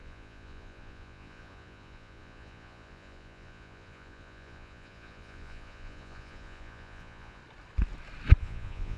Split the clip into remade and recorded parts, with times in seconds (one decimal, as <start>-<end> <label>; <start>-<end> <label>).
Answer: 0.0-7.4 remade; 7.4-8.4 recorded; 8.4-9.0 remade